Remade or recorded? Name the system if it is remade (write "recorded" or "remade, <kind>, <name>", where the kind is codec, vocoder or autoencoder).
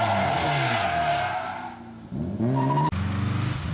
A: recorded